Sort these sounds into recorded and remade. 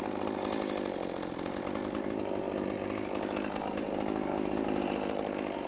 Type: recorded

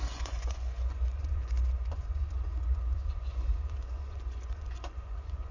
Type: remade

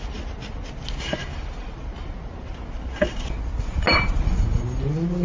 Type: recorded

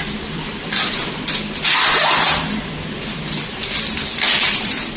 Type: remade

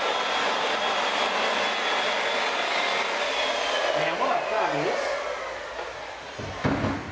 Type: recorded